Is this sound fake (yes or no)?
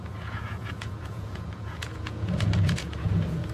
yes